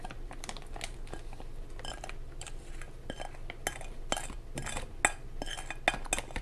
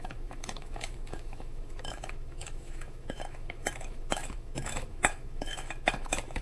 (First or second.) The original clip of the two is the first